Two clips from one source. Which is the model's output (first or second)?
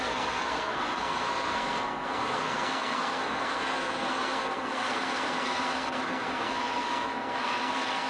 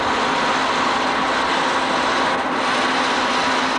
first